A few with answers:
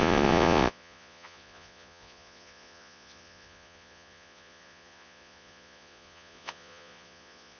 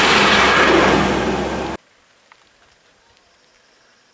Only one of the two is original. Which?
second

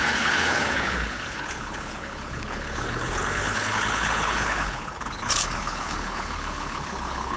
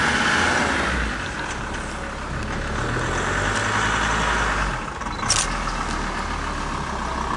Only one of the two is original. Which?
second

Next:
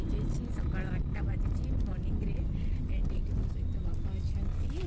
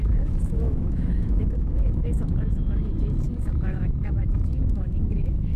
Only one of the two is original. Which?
first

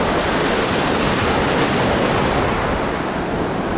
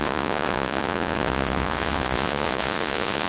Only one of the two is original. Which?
first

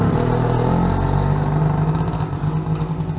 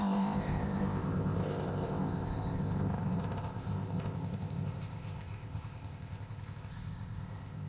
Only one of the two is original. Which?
first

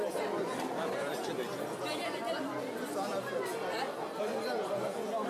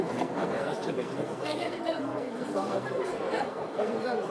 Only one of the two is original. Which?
first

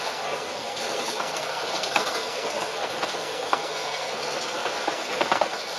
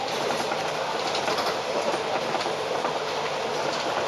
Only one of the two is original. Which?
second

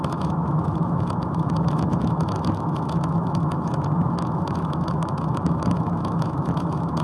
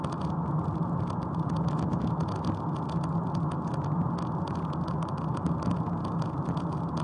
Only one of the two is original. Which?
second